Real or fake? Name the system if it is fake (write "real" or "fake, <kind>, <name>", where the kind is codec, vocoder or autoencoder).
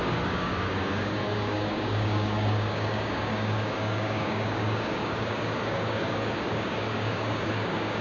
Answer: fake, codec, DAC